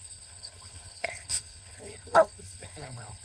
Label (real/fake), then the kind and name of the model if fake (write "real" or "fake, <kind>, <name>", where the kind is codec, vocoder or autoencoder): fake, codec, HILCodec